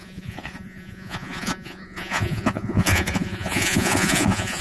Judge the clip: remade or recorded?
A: remade